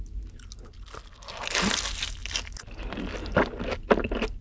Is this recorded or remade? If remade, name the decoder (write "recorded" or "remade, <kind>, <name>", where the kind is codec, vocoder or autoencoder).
recorded